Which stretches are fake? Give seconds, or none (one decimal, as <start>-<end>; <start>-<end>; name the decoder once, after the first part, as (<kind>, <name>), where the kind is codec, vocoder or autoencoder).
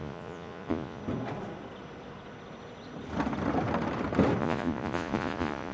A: 0.0-1.0 (vocoder, Vocos); 4.4-5.7